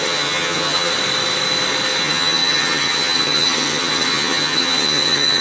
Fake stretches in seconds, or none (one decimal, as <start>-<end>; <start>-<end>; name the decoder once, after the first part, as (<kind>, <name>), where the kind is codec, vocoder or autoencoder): 0.0-0.9 (vocoder, HiFi-GAN); 2.0-5.4